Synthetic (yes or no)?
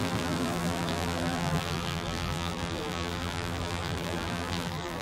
yes